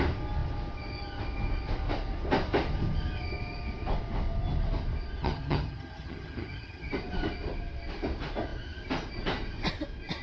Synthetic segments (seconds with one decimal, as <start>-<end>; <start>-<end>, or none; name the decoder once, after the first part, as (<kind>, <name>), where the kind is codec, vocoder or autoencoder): 5.2-6.9 (vocoder, HiFi-GAN)